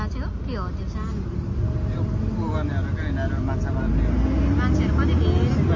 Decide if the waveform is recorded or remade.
recorded